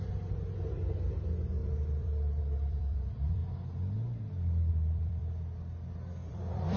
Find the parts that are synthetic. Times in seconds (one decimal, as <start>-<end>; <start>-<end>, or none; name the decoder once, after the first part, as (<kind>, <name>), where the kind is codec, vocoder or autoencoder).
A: 0.0-3.4 (vocoder, BigVGAN v2); 4.7-5.2; 6.3-6.8